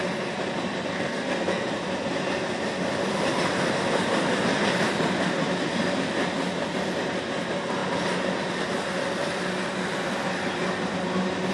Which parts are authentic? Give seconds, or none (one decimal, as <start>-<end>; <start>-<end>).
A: 0.0-0.9; 1.7-11.5